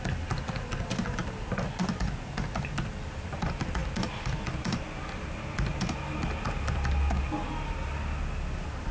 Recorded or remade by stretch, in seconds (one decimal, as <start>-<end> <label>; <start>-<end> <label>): 0.0-8.9 recorded

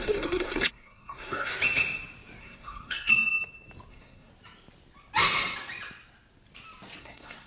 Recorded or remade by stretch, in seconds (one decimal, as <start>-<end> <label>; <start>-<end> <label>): 0.0-1.5 remade; 1.5-2.4 recorded; 2.4-3.1 remade; 3.1-3.9 recorded; 3.9-4.3 remade; 4.3-7.0 recorded; 7.0-7.5 remade

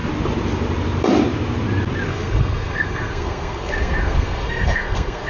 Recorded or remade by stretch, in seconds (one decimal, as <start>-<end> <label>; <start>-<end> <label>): 0.0-2.1 recorded; 2.1-5.3 remade

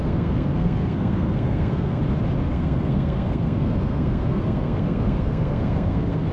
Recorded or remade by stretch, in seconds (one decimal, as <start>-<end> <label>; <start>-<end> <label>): 0.0-2.0 remade; 2.0-2.4 recorded; 2.4-6.3 remade

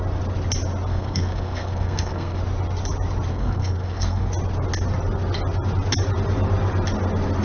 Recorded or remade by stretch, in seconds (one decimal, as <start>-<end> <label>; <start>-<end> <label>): 0.0-0.9 recorded; 0.9-2.4 remade; 2.4-3.3 recorded; 3.3-4.3 remade; 4.3-7.4 recorded

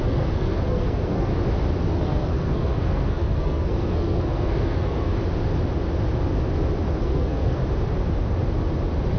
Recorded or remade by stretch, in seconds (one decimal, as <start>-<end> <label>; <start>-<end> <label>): 0.0-1.3 remade; 1.3-1.8 recorded; 1.8-5.1 remade; 5.1-7.0 recorded; 7.0-7.6 remade; 7.6-9.2 recorded